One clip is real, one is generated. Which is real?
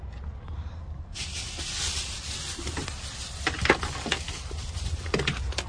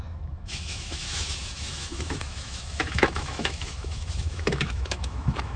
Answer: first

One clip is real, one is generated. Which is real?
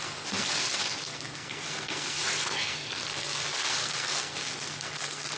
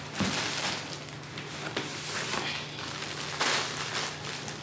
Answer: second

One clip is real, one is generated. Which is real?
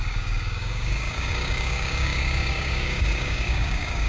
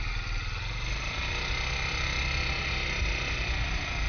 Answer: second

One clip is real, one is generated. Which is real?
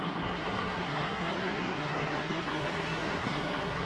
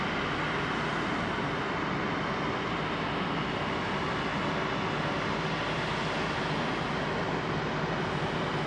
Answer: second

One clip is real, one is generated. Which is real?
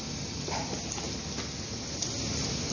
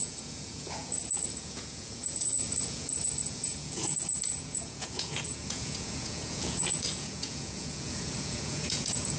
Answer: first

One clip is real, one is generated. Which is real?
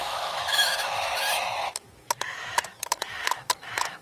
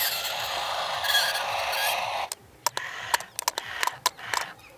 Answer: second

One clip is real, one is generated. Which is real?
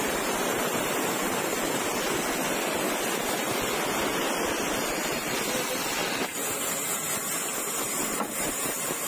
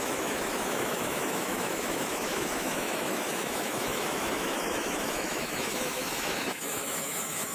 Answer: first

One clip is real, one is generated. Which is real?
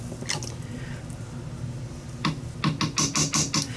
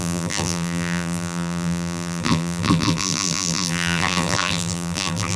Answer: first